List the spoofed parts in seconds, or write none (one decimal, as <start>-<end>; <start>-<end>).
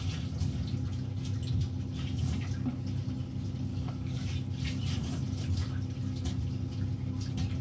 3.7-4.3